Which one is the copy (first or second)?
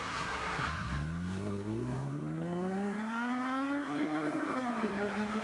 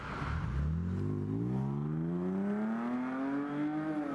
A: first